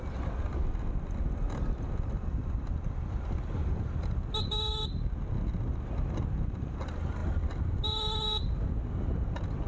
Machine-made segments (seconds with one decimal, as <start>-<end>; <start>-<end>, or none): none